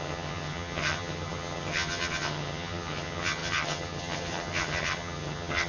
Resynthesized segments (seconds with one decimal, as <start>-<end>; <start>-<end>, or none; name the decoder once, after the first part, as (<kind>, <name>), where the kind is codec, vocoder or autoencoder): 0.0-5.7 (vocoder, HiFi-GAN)